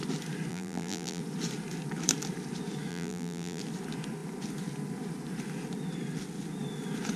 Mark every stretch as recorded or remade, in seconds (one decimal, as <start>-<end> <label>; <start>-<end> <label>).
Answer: 0.0-0.5 recorded; 0.5-1.2 remade; 1.2-2.9 recorded; 2.9-3.6 remade; 3.6-7.2 recorded

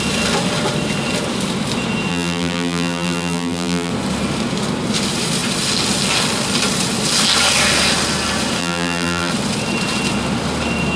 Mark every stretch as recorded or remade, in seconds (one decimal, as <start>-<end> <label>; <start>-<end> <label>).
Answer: 0.0-2.1 recorded; 2.1-3.9 remade; 3.9-8.6 recorded; 8.6-9.3 remade; 9.3-11.0 recorded

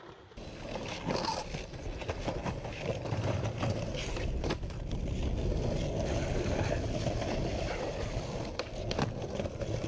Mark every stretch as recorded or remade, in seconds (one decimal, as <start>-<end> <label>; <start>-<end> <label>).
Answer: 0.0-2.0 recorded; 2.0-4.6 remade; 4.6-9.9 recorded

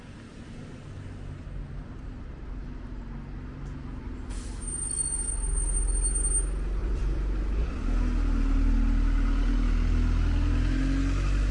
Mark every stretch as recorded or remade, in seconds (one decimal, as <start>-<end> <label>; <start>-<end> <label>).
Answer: 0.0-6.8 recorded; 6.8-7.7 remade; 7.7-11.5 recorded

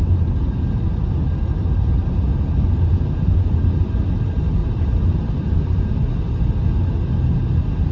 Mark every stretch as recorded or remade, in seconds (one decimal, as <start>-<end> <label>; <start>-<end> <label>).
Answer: 0.0-4.6 recorded; 4.6-5.8 remade; 5.8-7.9 recorded

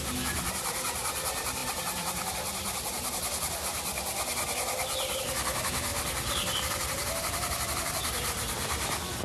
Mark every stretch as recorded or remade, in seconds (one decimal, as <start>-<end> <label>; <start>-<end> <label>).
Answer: 0.0-9.2 recorded

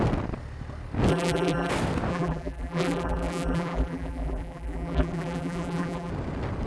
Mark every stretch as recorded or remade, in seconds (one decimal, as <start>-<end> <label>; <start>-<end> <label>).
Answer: 0.0-1.1 recorded; 1.1-1.7 remade; 1.7-2.1 recorded; 2.1-6.1 remade; 6.1-6.7 recorded